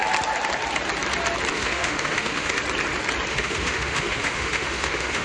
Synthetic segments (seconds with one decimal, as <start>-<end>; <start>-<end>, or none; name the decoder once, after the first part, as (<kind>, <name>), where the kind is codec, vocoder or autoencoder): 1.5-2.6 (autoencoder, DAC-VAE); 3.3-5.2